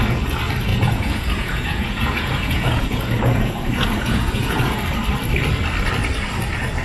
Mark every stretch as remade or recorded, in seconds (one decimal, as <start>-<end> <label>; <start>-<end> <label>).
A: 0.0-0.7 recorded; 0.7-4.8 remade; 4.8-6.8 recorded